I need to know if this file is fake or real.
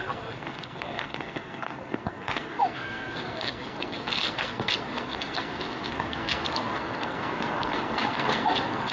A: fake